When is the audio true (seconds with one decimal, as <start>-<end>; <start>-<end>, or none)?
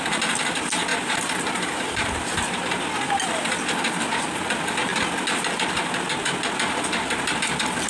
0.0-0.9; 2.8-7.0; 7.5-7.9